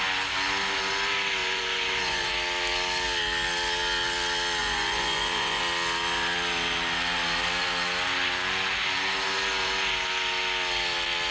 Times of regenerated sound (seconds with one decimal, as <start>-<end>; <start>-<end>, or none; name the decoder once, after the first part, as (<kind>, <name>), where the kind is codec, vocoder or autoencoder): 1.4-2.3 (vocoder, Vocos); 4.6-5.6